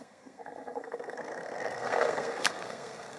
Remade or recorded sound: remade